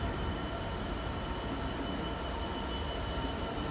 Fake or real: real